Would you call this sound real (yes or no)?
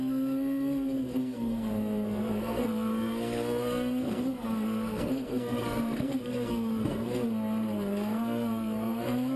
no